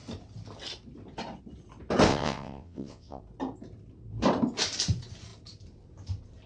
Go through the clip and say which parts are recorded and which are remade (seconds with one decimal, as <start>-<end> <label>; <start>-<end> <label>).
0.0-2.1 recorded; 2.1-3.2 remade; 3.2-6.5 recorded